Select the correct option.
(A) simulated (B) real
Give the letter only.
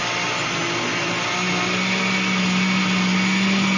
B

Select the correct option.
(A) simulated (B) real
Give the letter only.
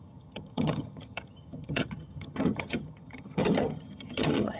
A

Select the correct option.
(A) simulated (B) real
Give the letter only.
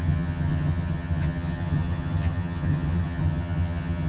A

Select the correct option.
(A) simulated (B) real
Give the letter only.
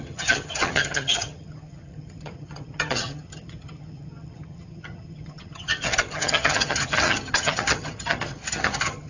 A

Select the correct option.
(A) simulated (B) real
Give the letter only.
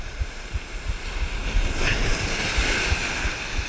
B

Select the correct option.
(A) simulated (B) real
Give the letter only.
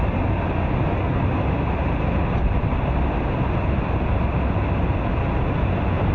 B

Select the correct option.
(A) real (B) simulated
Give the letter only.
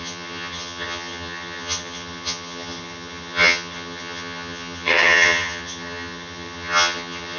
B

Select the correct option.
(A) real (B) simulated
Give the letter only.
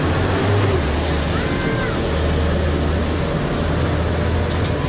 A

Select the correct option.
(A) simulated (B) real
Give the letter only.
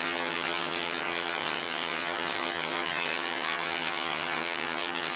A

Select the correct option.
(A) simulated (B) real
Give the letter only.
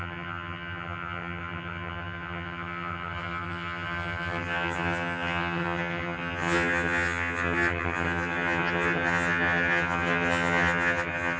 A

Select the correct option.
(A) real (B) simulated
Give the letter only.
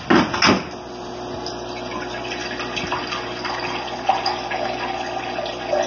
A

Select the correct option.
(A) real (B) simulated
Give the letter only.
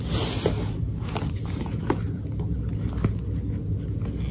A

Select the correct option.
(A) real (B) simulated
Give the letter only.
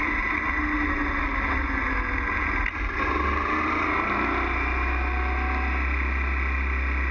A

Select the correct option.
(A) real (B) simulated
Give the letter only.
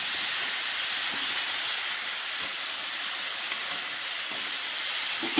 A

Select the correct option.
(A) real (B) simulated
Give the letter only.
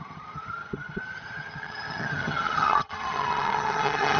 B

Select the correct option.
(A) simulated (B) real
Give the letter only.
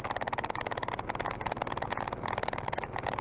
B